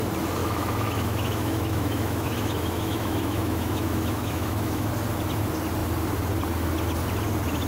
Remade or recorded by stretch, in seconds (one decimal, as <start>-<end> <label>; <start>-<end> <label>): 0.0-0.4 recorded; 0.4-4.9 remade; 4.9-7.7 recorded